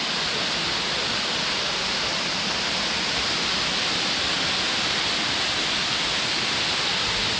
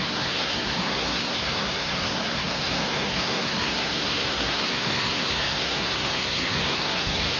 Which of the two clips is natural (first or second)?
first